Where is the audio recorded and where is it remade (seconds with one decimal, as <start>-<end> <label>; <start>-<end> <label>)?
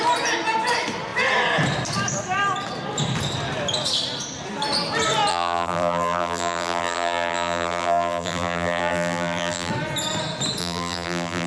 0.0-5.3 recorded; 5.3-9.7 remade; 9.7-10.6 recorded; 10.6-11.5 remade